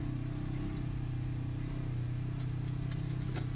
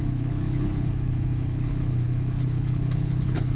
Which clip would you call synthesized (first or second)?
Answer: second